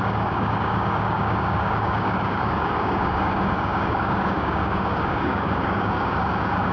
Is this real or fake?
fake